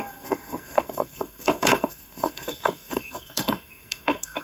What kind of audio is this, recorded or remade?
remade